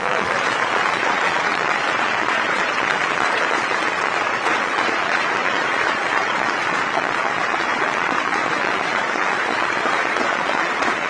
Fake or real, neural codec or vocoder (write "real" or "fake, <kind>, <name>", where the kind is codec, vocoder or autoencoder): fake, vocoder, Vocos